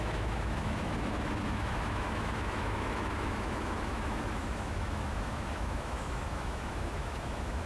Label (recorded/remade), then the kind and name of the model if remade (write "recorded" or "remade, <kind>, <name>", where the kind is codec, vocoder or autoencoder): remade, autoencoder, DAC-VAE